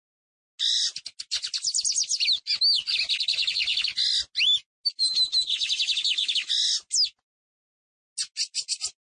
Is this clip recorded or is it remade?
recorded